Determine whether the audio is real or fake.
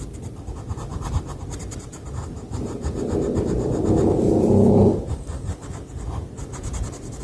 real